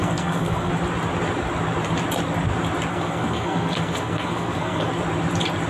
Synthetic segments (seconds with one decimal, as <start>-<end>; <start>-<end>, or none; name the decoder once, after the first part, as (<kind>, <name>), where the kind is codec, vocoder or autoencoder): 0.0-0.7 (codec, SNAC); 2.9-4.9